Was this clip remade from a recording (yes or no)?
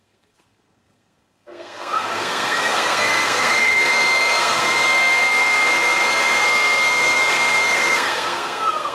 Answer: yes